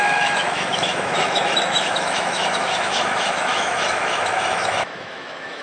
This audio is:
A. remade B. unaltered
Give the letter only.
A